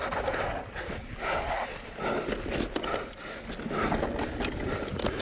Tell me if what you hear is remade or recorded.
recorded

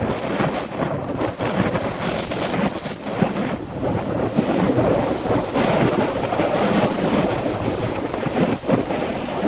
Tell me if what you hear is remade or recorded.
recorded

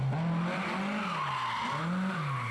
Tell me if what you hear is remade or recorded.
recorded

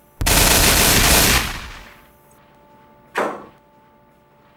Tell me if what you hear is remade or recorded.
recorded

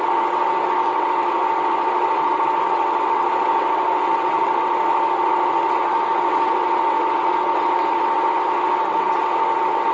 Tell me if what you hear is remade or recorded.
remade